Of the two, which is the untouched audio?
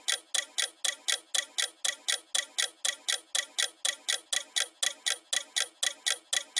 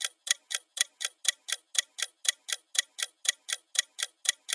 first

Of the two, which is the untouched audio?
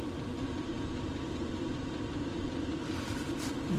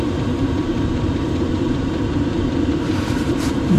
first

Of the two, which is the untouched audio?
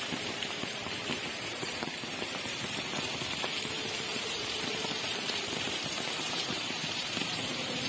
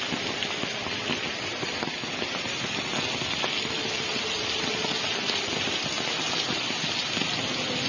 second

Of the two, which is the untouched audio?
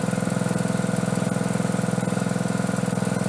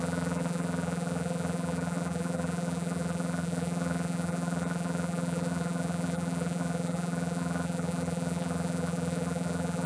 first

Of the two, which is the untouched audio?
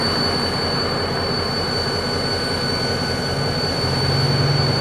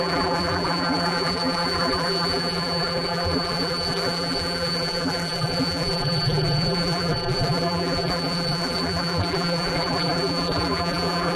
first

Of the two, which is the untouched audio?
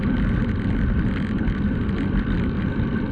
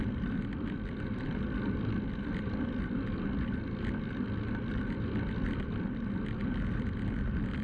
second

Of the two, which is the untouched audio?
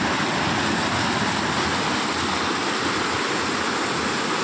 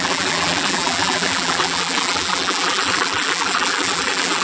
first